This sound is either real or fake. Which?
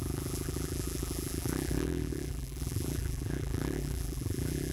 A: fake